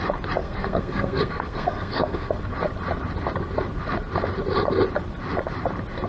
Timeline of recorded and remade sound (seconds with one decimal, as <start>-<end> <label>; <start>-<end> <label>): 0.0-0.4 recorded; 0.4-2.3 remade; 2.3-6.1 recorded